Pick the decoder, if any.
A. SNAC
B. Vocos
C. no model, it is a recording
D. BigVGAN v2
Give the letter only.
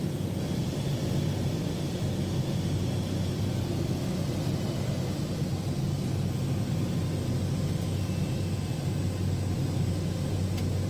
C